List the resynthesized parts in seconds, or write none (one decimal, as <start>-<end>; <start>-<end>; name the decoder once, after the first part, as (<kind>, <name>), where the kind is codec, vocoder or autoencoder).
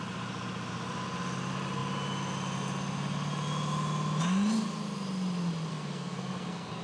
5.7-6.8 (codec, SNAC)